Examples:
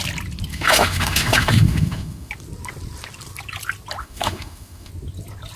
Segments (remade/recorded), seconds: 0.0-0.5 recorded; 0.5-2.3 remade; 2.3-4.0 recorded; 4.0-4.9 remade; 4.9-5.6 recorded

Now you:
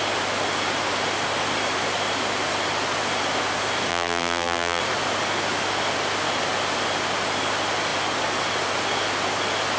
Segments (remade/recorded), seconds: 0.0-3.9 recorded; 3.9-4.8 remade; 4.8-9.8 recorded

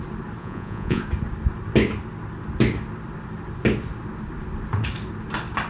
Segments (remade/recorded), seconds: 0.0-0.4 recorded; 0.4-1.0 remade; 1.0-5.7 recorded

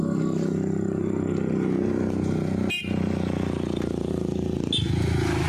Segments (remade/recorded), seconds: 0.0-2.8 recorded; 2.8-4.1 remade; 4.1-5.5 recorded

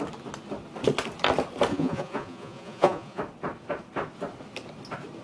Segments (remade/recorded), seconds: 0.0-1.7 recorded; 1.7-3.2 remade; 3.2-5.2 recorded

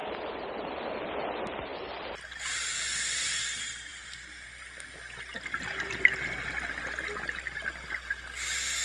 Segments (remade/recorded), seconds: 0.0-0.8 remade; 0.8-8.8 recorded